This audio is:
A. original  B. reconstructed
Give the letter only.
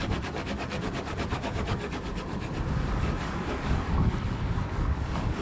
B